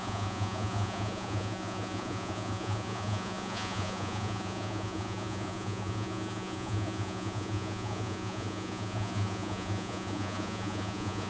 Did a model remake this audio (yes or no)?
yes